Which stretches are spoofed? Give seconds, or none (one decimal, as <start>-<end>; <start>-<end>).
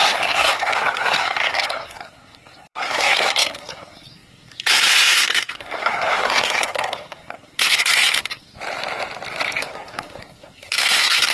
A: 0.0-8.5; 9.6-11.3